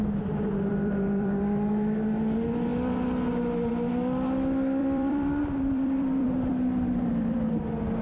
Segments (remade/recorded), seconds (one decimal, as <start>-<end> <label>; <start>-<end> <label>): 0.0-0.7 recorded; 0.7-1.4 remade; 1.4-4.8 recorded; 4.8-7.5 remade; 7.5-8.0 recorded